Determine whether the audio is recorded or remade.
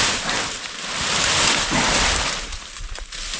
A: recorded